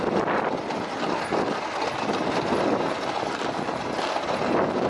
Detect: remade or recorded recorded